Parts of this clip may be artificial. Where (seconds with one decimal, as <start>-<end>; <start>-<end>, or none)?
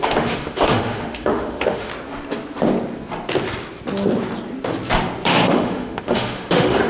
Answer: 0.0-1.9; 5.5-6.9